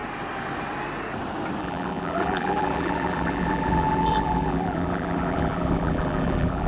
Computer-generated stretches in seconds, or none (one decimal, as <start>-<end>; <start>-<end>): 1.6-6.7